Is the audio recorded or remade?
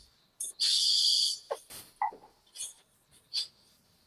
recorded